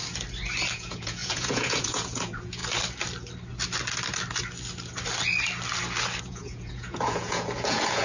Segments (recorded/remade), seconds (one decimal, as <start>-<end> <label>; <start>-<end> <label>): 0.0-0.7 recorded; 0.7-2.6 remade; 2.6-6.2 recorded; 6.2-8.0 remade